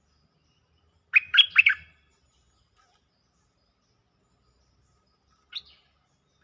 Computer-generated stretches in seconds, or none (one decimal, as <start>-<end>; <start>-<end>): none